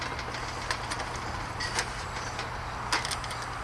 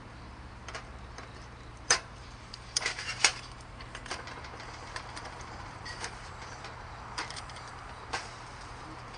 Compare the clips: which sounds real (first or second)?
first